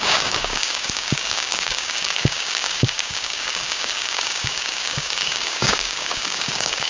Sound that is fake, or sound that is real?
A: fake